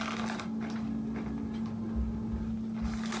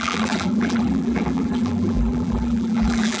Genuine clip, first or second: first